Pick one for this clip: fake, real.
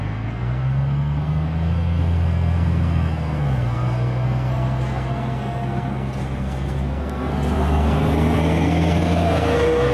fake